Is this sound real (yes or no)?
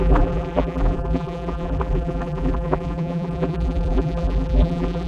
no